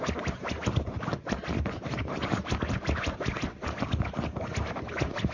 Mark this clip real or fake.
real